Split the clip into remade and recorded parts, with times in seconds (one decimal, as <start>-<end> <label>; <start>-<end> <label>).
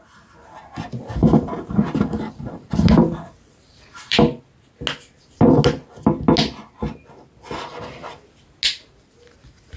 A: 0.0-1.2 recorded; 1.2-4.4 remade; 4.4-9.8 recorded